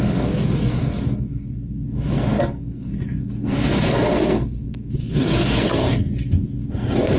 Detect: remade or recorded remade